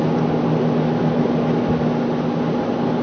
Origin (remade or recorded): recorded